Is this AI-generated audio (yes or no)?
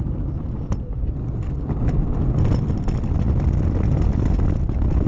no